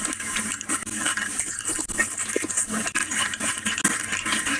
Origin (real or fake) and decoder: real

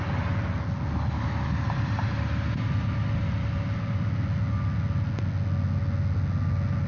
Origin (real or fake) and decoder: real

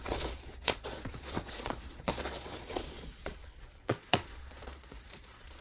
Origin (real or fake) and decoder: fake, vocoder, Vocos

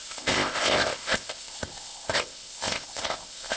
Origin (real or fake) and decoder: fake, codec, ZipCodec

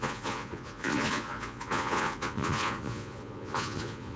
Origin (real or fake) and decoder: fake, vocoder, Vocos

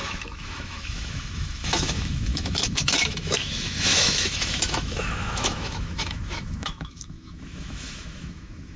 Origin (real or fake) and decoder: fake, autoencoder, DAC-VAE